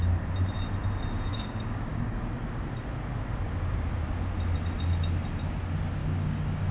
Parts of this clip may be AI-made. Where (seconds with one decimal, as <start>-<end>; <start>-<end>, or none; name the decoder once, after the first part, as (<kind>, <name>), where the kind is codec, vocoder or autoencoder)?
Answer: 1.3-2.2 (codec, DAC); 6.0-6.7